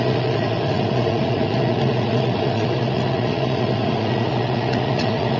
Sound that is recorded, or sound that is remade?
remade